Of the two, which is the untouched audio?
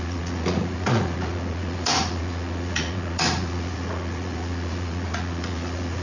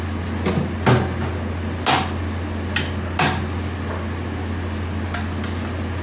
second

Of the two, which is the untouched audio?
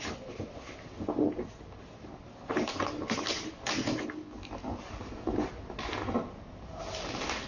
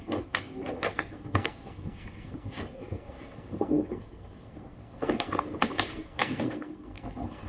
first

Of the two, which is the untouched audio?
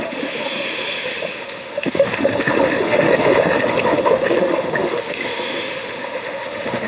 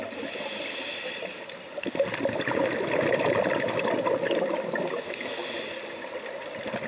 second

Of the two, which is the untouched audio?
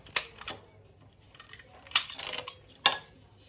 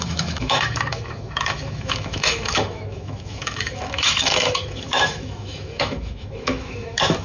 first